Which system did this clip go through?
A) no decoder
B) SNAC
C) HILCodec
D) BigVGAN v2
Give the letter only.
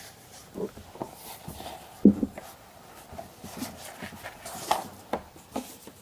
A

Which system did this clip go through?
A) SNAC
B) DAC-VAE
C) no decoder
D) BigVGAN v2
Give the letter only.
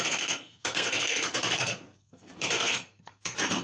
A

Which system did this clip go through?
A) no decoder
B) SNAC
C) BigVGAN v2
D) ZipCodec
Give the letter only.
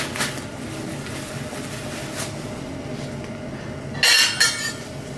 A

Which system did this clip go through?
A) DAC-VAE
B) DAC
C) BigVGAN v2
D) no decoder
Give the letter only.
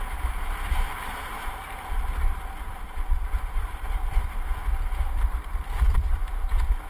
C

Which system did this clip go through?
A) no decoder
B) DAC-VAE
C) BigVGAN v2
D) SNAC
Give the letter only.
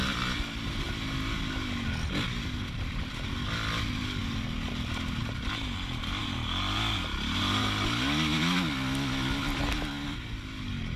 A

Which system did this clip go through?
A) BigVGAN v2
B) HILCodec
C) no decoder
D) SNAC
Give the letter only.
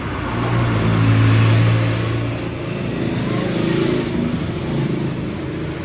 C